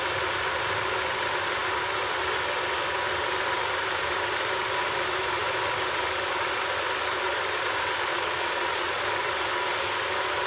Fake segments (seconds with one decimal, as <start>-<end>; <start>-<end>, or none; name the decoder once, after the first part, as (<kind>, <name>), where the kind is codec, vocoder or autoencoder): 8.1-9.0 (vocoder, Vocos)